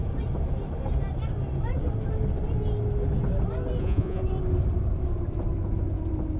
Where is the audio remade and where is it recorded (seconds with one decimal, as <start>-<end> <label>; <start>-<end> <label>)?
0.0-3.8 recorded; 3.8-4.2 remade; 4.2-6.4 recorded